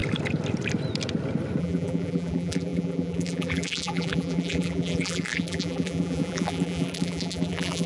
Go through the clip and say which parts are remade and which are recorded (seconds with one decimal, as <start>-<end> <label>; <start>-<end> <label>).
0.0-1.6 recorded; 1.6-7.9 remade